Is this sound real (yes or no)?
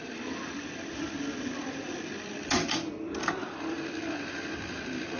yes